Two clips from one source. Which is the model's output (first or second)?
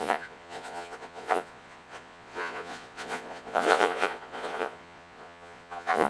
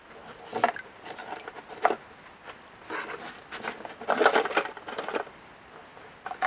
first